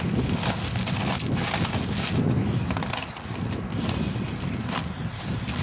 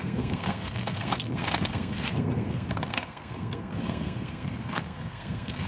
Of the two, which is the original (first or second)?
first